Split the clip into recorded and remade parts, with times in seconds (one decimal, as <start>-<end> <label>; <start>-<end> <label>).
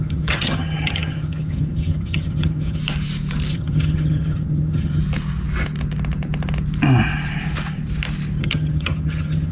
0.0-2.8 remade; 2.8-3.5 recorded; 3.5-5.0 remade; 5.0-8.4 recorded; 8.4-9.5 remade